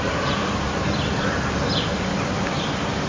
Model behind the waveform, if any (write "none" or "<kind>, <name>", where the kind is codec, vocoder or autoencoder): vocoder, BigVGAN v2